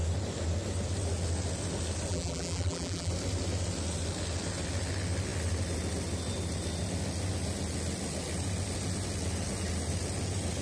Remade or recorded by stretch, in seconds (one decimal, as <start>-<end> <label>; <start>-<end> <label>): 0.0-2.1 recorded; 2.1-3.1 remade; 3.1-10.6 recorded